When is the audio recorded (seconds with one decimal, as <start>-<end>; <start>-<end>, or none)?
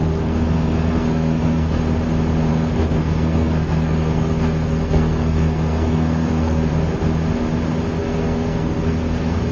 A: 1.8-2.5; 6.7-8.0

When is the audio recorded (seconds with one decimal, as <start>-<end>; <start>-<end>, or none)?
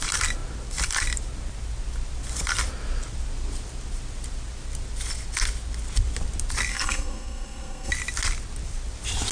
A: 0.0-6.7; 7.9-9.3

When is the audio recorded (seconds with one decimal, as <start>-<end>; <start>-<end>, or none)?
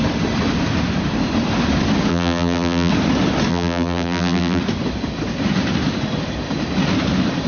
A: 0.0-2.1; 2.9-3.5; 4.6-7.5